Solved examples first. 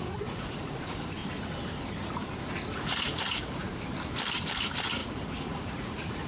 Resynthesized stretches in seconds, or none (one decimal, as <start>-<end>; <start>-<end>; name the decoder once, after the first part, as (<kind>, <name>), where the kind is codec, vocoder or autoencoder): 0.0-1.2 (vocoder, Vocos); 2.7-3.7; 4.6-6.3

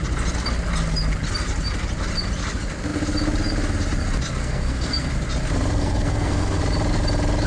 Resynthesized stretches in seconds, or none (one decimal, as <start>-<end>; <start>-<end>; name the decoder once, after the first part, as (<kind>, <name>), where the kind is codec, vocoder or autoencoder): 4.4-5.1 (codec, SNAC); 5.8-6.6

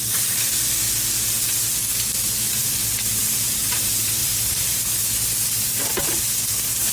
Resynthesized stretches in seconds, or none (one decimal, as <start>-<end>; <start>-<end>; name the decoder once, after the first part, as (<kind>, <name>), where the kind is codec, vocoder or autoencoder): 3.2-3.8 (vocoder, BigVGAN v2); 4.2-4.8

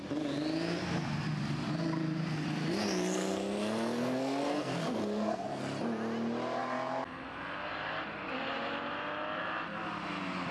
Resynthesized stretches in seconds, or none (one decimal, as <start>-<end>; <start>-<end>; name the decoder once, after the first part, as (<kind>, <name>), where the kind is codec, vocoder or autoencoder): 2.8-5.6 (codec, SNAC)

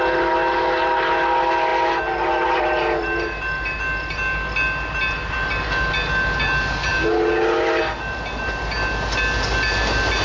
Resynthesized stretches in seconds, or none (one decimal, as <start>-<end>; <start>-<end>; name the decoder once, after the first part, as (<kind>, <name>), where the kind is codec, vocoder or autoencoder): none

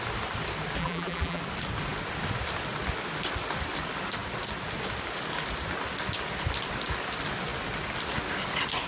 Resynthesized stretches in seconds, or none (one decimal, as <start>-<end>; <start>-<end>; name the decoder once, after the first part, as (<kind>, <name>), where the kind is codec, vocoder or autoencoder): 0.8-1.4 (vocoder, BigVGAN v2)

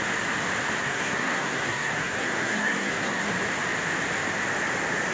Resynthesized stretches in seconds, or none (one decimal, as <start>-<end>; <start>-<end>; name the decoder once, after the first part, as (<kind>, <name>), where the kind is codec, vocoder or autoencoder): 0.8-3.3 (codec, SNAC)